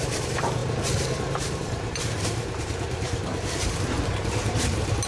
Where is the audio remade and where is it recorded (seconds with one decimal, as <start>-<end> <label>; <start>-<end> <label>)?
0.0-5.1 remade